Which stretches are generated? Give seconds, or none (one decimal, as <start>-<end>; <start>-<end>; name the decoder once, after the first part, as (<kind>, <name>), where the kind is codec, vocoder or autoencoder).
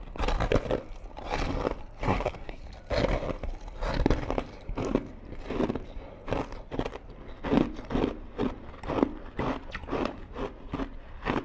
2.0-2.6 (codec, SNAC)